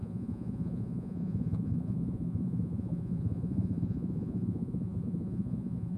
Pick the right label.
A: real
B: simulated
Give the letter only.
B